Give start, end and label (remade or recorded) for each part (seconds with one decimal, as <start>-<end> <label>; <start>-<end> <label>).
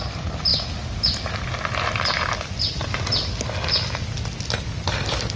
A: 0.0-5.4 recorded